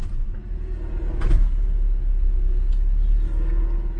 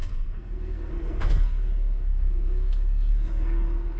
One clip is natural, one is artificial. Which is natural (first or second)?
first